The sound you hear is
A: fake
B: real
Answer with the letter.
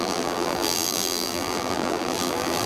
A